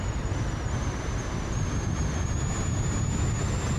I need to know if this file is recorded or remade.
recorded